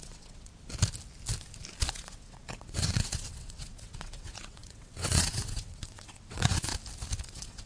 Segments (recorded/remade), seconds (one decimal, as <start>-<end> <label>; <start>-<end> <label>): 0.0-0.5 remade; 0.5-1.9 recorded; 1.9-6.7 remade; 6.7-7.3 recorded; 7.3-7.7 remade